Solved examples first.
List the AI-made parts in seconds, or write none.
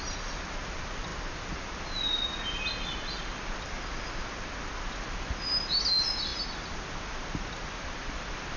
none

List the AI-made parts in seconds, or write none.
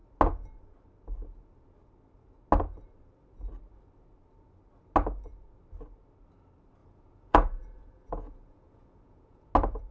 6.8-9.5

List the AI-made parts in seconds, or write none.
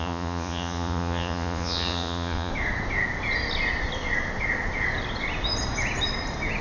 0.0-2.5